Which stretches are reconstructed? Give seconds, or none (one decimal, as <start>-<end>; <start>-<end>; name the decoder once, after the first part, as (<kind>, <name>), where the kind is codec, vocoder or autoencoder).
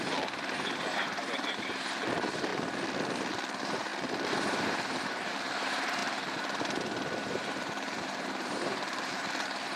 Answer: 0.0-2.5 (vocoder, BigVGAN v2); 3.3-9.8